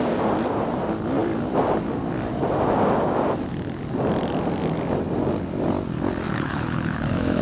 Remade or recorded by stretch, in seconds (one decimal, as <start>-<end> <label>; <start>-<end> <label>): 0.0-6.3 recorded; 6.3-7.4 remade